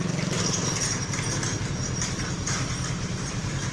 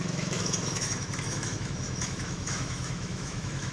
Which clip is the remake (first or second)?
second